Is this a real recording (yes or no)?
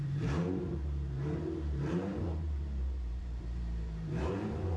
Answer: no